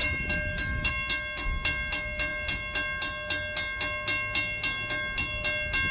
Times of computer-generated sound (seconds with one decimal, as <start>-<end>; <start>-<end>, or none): 0.0-0.9